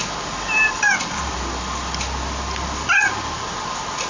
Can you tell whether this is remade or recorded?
recorded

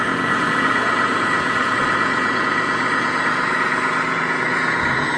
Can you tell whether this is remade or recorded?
remade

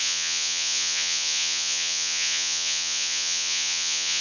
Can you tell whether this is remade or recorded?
remade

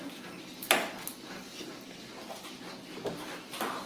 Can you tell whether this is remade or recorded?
recorded